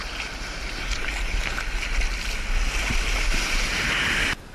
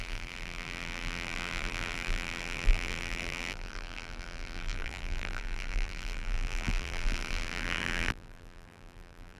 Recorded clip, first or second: first